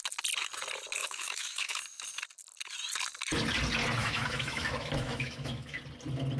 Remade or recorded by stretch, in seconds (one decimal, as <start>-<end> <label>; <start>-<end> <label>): 0.0-1.0 recorded; 1.0-1.8 remade; 1.8-4.0 recorded; 4.0-5.8 remade; 5.8-6.4 recorded